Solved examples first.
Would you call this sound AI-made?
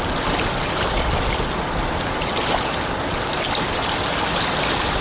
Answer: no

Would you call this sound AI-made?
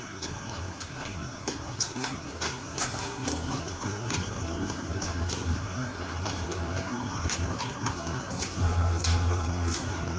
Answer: yes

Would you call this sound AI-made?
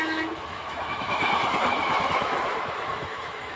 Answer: yes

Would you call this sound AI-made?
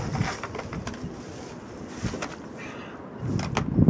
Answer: no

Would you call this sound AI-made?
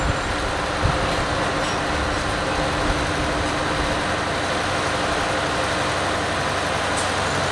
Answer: no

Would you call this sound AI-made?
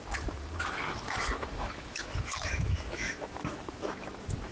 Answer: yes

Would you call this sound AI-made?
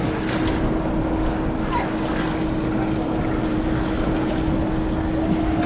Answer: no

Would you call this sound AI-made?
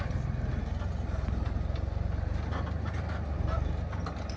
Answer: no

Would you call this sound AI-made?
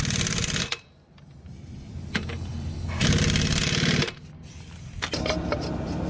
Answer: no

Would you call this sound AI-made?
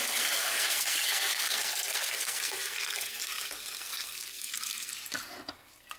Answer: yes